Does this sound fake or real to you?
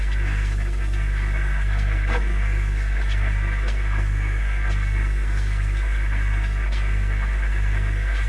fake